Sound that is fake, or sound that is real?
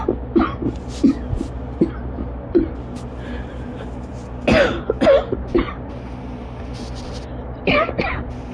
real